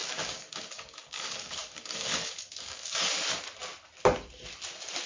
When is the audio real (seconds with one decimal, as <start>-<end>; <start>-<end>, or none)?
3.1-5.1